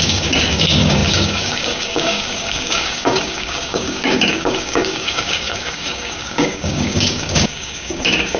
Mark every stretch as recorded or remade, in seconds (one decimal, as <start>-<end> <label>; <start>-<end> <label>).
0.0-8.4 remade